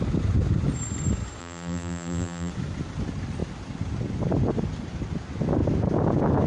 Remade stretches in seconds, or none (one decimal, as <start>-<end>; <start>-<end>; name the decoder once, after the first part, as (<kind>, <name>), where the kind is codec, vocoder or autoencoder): 1.4-2.5 (vocoder, BigVGAN v2)